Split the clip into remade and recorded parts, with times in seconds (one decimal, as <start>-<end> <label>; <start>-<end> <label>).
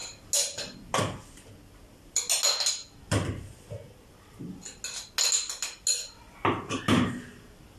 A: 0.0-7.8 recorded